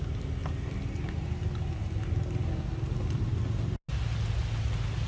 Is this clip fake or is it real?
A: real